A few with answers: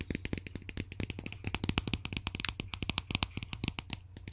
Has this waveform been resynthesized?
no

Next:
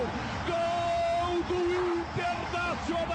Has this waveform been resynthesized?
no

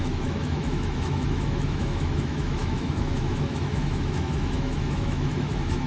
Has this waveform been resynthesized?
yes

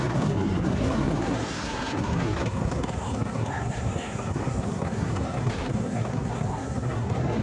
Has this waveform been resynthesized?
yes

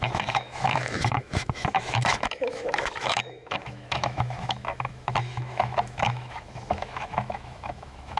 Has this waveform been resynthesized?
yes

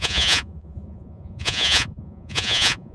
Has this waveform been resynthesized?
yes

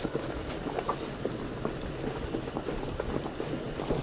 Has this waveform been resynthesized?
no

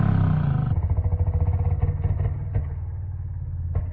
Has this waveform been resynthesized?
no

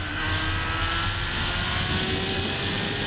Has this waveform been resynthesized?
no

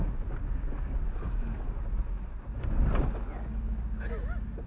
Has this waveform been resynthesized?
no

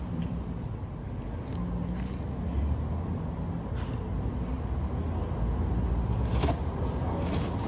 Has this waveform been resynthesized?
no